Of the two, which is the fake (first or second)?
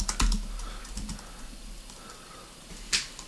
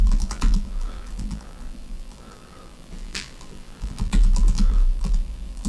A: second